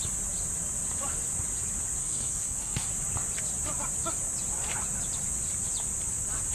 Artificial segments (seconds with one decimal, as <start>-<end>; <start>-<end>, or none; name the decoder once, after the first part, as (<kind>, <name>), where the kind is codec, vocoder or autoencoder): 2.0-2.9 (codec, SNAC)

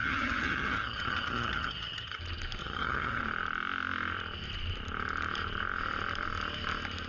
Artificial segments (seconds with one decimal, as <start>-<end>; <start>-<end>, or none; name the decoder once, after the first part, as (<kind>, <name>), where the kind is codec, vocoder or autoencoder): 0.0-2.2 (vocoder, HiFi-GAN); 2.6-3.2

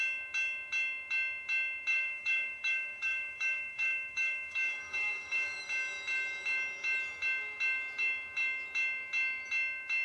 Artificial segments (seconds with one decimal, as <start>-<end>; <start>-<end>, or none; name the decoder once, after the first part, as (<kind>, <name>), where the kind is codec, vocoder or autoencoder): 1.9-5.6 (codec, DAC)

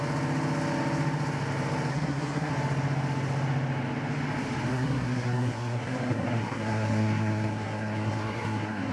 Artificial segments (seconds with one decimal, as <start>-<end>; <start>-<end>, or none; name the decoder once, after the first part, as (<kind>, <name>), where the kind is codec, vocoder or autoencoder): 1.9-2.5 (codec, SNAC); 4.7-8.9

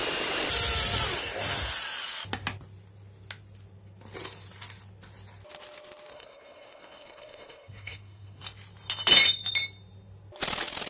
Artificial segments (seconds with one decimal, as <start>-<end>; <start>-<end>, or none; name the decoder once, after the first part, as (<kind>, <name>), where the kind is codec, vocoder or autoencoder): 6.1-8.4 (codec, SNAC)

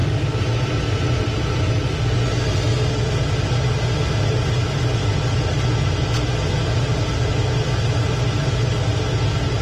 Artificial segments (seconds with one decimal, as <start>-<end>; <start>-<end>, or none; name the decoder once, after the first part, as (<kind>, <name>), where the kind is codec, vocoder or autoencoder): none

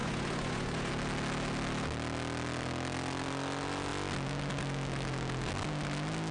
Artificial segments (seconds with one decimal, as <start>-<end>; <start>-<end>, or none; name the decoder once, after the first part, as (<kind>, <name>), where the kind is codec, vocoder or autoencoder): 0.0-0.9 (vocoder, Vocos)